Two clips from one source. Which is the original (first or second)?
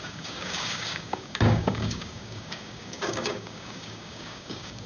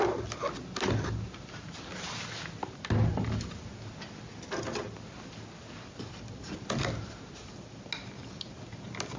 second